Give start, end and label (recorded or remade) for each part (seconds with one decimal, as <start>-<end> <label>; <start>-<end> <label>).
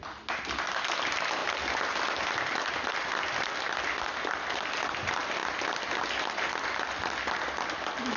0.0-8.2 recorded